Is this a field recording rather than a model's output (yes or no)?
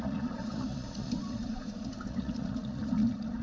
no